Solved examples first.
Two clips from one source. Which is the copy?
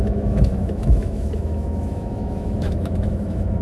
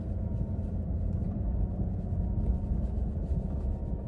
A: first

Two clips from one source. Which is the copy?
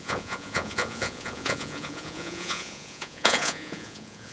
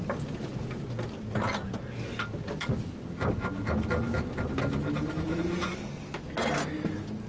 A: first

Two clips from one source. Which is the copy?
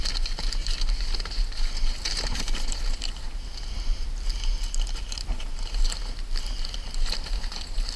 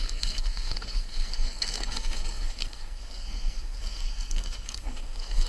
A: second